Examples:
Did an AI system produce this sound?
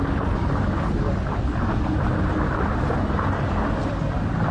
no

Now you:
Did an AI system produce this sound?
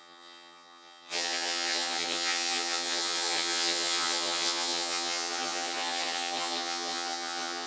yes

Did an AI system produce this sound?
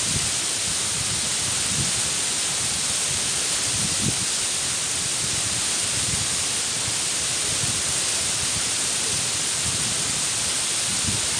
no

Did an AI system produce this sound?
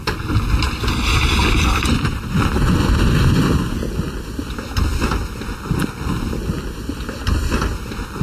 no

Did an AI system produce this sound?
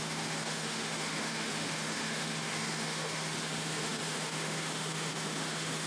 yes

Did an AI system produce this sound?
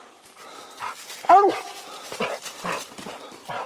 no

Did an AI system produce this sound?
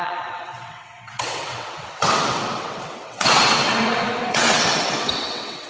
yes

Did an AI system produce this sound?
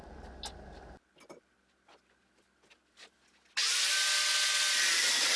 no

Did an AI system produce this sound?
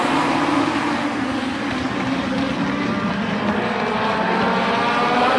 no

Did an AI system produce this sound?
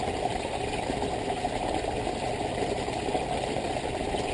no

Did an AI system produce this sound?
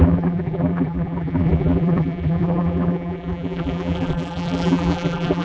yes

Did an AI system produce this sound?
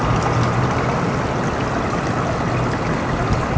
no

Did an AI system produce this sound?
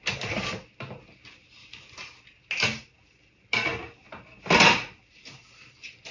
no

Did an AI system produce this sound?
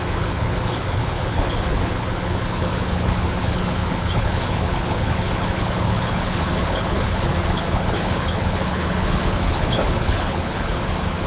yes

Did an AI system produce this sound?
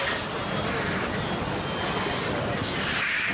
no